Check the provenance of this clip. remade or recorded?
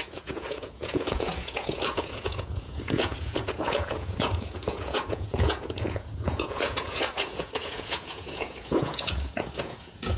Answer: remade